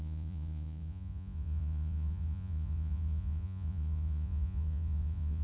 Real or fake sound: fake